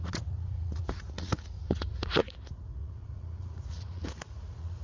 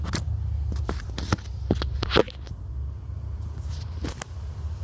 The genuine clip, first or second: second